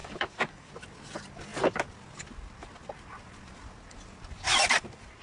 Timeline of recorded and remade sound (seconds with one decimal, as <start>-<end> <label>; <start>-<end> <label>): 0.0-0.7 remade; 0.7-5.2 recorded